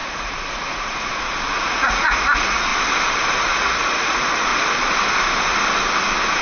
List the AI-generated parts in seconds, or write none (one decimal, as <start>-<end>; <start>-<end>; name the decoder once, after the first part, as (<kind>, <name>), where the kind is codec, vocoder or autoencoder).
0.0-2.7 (vocoder, Vocos); 3.5-4.5